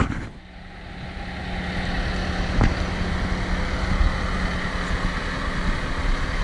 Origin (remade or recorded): recorded